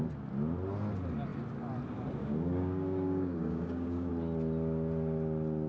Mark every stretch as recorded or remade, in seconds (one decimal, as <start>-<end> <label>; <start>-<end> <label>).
0.0-2.2 recorded; 2.2-4.1 remade; 4.1-5.7 recorded

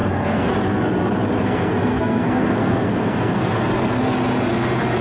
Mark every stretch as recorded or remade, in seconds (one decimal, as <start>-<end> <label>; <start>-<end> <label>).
0.0-0.5 remade; 0.5-1.4 recorded; 1.4-3.5 remade; 3.5-5.0 recorded

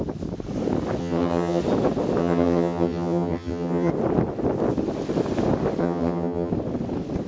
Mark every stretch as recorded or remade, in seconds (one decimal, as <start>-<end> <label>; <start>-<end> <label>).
0.0-1.0 recorded; 1.0-1.6 remade; 1.6-2.2 recorded; 2.2-3.9 remade; 3.9-5.8 recorded; 5.8-6.5 remade; 6.5-7.3 recorded

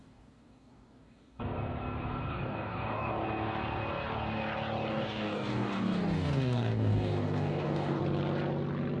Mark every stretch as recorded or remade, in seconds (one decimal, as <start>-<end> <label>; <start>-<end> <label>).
0.0-1.5 remade; 1.5-2.3 recorded; 2.3-3.1 remade; 3.1-4.9 recorded; 4.9-8.0 remade; 8.0-9.0 recorded

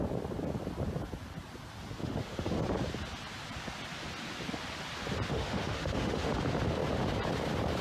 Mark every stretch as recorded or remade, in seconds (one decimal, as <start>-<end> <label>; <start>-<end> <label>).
0.0-2.0 recorded; 2.0-2.6 remade; 2.6-5.3 recorded; 5.3-6.3 remade; 6.3-7.8 recorded

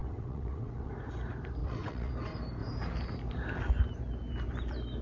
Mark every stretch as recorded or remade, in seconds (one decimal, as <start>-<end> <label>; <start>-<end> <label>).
0.0-0.9 remade; 0.9-1.6 recorded; 1.6-2.1 remade; 2.1-5.0 recorded

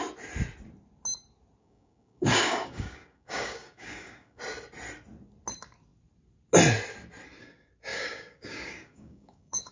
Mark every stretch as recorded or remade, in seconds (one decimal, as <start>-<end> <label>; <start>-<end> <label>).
0.0-1.6 recorded; 1.6-4.4 remade; 4.4-7.9 recorded; 7.9-9.7 remade